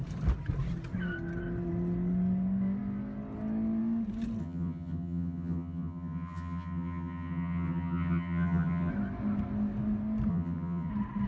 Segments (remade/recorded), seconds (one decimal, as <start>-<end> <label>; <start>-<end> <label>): 0.0-4.4 recorded; 4.4-8.9 remade; 8.9-10.3 recorded; 10.3-10.9 remade; 10.9-11.3 recorded